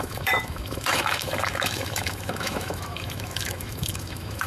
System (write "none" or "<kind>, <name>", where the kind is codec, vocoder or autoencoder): autoencoder, DAC-VAE